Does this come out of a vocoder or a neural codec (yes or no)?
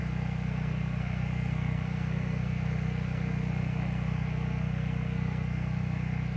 yes